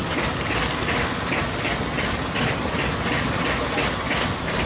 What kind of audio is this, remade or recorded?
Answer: recorded